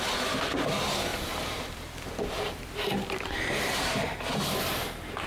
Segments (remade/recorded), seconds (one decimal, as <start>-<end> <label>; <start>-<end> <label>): 0.0-1.1 recorded; 1.1-4.3 remade; 4.3-5.3 recorded